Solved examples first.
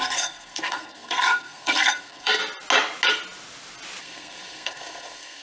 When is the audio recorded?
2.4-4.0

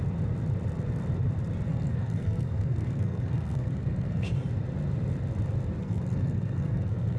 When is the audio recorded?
0.0-1.7; 4.3-5.8